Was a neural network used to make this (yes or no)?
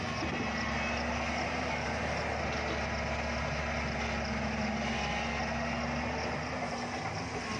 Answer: no